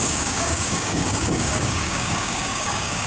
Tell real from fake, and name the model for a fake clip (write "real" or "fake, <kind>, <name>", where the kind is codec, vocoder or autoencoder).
fake, codec, DAC